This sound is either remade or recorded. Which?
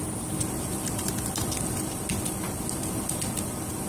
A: recorded